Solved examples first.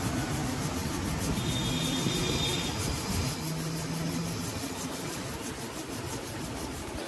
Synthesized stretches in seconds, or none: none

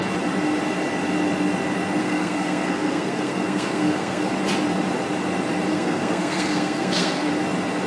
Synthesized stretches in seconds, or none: 2.0-4.3 (codec, SNAC); 5.7-7.3

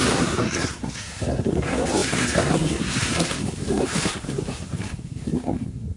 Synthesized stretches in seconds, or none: 0.0-6.0 (codec, SNAC)

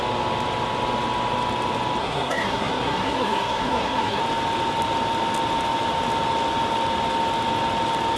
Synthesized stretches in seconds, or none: 2.0-4.2 (codec, SNAC)

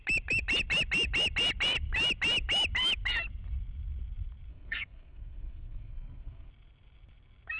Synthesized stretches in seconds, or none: 4.5-6.5 (codec, SNAC)

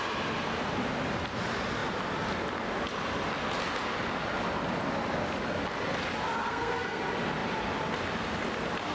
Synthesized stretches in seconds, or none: 6.4-7.0 (codec, SNAC)

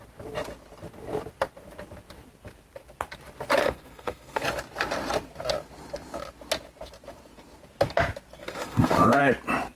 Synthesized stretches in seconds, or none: 3.6-4.4 (codec, SNAC); 8.4-9.2

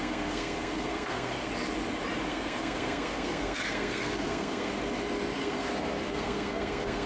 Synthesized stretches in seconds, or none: 0.0-1.5 (codec, SNAC); 2.3-4.7; 5.4-7.1